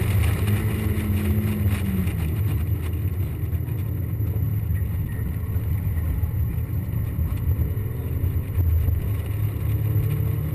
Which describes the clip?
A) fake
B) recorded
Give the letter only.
B